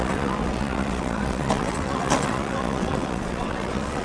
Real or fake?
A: fake